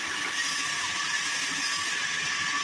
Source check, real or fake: real